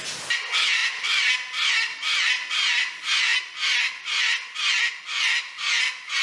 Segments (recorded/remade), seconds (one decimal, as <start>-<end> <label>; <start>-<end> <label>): 0.0-6.2 recorded